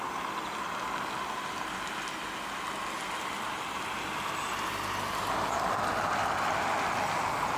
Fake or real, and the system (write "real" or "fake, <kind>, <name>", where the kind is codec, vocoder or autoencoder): real